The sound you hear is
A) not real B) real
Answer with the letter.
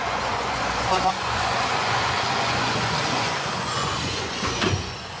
A